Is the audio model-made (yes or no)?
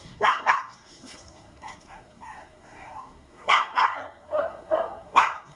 yes